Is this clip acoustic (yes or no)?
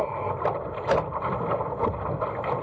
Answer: yes